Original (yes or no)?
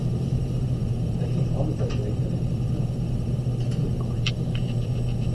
no